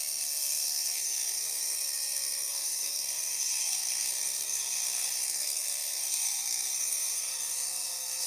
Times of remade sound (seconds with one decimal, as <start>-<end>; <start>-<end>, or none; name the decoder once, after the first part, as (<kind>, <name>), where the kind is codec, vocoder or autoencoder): 0.0-8.3 (codec, SNAC)